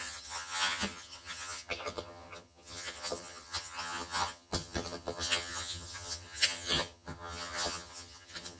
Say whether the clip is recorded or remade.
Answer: remade